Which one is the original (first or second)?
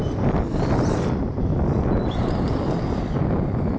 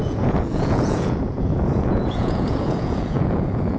first